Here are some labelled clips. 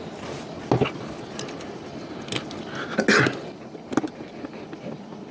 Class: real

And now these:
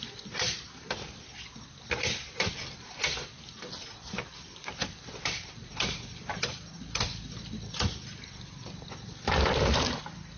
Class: real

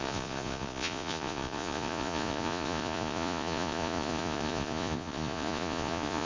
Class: fake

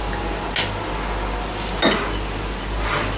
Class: real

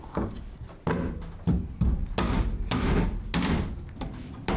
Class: real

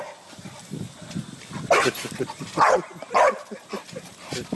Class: real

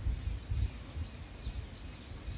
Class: real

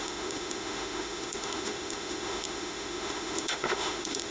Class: fake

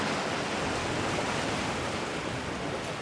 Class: real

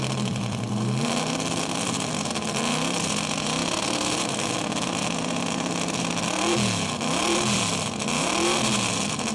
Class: fake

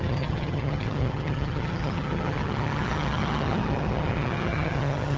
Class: fake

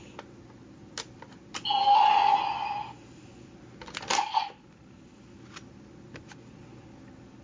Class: real